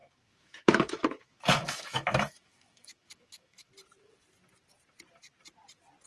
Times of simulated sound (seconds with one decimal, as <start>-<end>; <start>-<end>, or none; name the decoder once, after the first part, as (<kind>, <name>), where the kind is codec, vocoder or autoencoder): 0.0-3.7 (autoencoder, DAC-VAE)